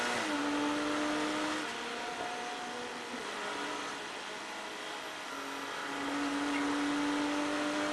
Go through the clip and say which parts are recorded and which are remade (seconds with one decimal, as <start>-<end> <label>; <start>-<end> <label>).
0.0-7.9 recorded